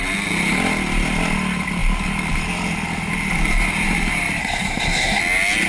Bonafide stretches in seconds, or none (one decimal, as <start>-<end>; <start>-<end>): 0.0-4.4; 5.2-5.7